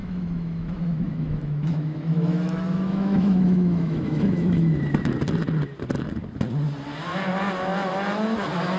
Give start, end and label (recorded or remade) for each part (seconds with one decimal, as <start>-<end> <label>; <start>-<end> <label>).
0.0-4.8 remade; 4.8-8.8 recorded